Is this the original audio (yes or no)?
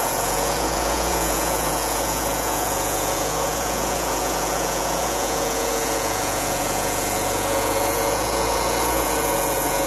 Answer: no